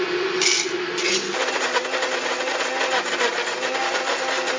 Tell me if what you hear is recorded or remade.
recorded